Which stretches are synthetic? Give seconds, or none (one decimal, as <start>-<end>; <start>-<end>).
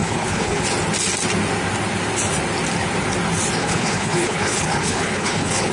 0.0-0.6; 3.6-5.7